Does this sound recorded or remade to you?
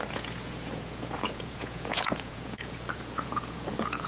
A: remade